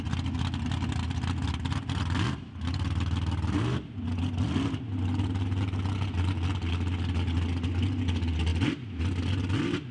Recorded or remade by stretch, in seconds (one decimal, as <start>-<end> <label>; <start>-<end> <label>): 0.0-9.9 recorded